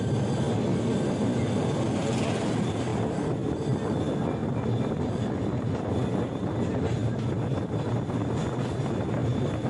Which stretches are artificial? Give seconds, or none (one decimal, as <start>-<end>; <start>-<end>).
2.9-3.6; 4.4-5.9; 9.2-9.7